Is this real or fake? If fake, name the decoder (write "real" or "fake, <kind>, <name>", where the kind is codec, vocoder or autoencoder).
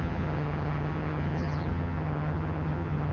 fake, vocoder, HiFi-GAN